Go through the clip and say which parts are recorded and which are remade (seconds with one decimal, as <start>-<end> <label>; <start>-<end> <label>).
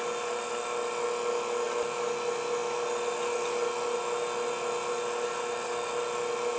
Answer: 0.0-6.6 recorded